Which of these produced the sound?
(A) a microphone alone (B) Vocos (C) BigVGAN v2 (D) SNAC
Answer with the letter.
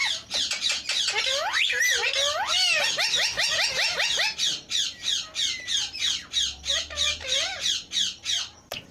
A